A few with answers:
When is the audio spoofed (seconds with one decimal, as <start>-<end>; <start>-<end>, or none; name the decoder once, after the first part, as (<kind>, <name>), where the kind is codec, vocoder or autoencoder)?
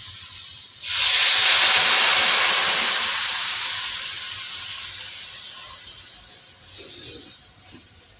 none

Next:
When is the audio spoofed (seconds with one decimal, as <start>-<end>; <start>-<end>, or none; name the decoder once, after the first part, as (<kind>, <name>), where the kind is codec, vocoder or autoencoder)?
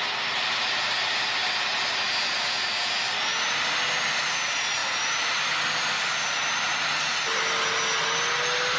none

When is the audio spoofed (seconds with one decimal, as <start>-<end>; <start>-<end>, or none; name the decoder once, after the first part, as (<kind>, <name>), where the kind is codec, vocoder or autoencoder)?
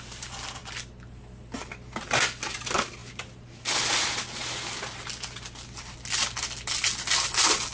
none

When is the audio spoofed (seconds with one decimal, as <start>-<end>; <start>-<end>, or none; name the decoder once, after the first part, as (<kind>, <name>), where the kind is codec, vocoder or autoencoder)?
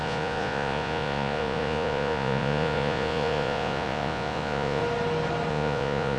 0.0-4.8 (vocoder, Vocos); 5.5-6.2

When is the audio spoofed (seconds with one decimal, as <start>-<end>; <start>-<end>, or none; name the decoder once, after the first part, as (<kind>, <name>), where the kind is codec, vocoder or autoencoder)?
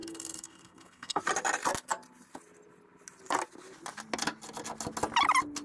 0.0-1.2 (codec, SNAC)